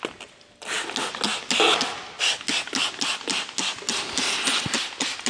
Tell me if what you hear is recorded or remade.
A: recorded